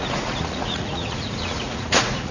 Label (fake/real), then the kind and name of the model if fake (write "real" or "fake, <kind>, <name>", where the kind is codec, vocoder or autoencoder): fake, vocoder, Vocos